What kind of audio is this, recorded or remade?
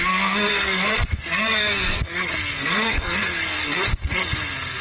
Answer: remade